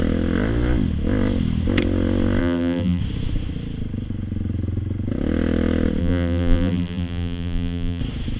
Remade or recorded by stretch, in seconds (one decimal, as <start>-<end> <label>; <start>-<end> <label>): 0.0-2.4 recorded; 2.4-3.0 remade; 3.0-6.0 recorded; 6.0-8.0 remade; 8.0-8.4 recorded